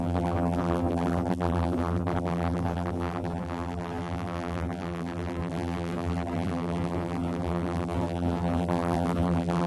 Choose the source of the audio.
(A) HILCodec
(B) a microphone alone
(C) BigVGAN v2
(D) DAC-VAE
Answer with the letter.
C